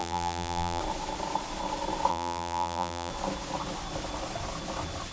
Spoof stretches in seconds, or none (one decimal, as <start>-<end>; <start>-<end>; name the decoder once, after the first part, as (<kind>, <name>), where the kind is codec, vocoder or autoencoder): 0.0-0.8 (vocoder, BigVGAN v2); 2.1-3.1